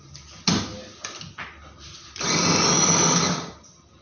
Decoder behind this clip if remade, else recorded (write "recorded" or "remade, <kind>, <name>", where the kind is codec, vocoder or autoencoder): recorded